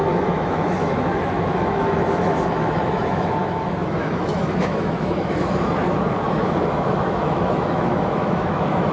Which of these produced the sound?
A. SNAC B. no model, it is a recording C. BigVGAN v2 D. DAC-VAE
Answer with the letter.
D